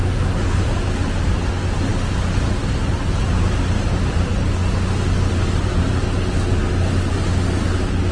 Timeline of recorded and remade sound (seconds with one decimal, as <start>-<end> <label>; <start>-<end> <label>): 0.0-8.1 recorded